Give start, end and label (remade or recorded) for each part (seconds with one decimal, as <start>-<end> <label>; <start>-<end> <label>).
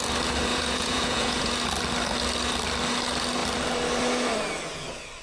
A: 0.0-0.5 recorded; 0.5-1.5 remade; 1.5-5.2 recorded